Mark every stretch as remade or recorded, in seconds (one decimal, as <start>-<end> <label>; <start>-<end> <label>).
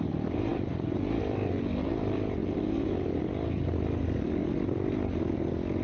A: 0.0-5.8 recorded